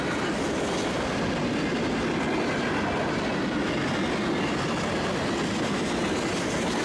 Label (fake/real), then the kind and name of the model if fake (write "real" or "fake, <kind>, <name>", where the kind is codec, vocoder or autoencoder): real